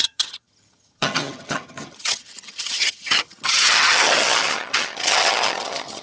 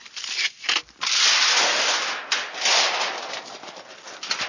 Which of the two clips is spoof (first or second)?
first